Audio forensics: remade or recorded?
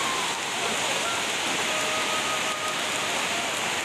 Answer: recorded